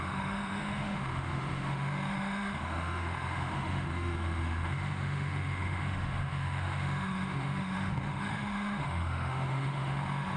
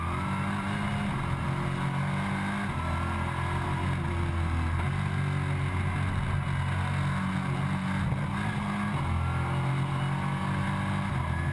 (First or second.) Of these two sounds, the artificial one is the first